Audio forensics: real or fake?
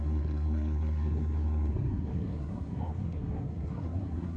fake